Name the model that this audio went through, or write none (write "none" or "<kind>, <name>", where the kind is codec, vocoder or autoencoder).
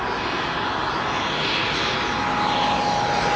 none